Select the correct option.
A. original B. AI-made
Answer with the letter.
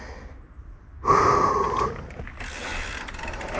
A